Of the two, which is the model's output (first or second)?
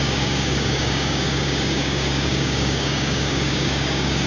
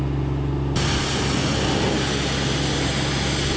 first